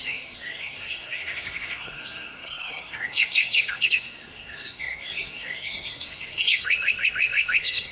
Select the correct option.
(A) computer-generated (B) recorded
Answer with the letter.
A